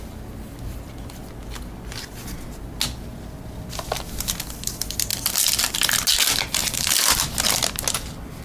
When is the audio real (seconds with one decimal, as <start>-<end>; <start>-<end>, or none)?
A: 0.0-5.1; 5.7-6.6; 7.2-8.4